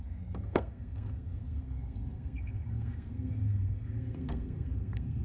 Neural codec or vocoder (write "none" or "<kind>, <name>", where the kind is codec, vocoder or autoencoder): codec, SNAC